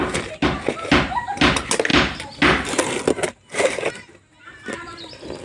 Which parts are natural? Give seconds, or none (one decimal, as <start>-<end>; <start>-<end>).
0.0-5.4